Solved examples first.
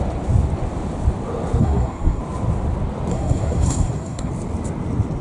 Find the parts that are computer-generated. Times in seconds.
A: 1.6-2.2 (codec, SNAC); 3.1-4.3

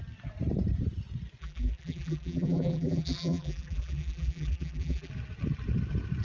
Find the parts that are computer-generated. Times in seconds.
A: 1.4-5.1 (vocoder, BigVGAN v2)

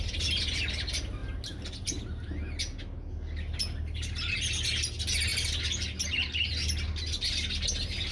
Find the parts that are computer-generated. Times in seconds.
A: none

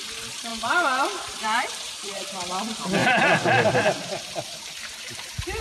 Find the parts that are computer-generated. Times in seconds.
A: 0.5-2.2 (vocoder, BigVGAN v2); 3.0-3.8